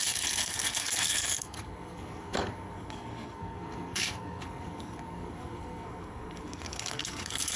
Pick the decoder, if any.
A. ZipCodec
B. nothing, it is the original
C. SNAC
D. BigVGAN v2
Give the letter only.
C